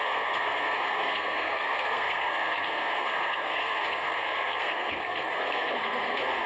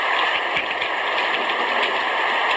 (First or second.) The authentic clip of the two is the second